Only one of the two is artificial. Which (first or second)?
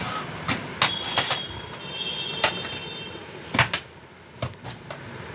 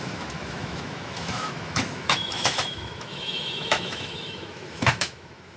second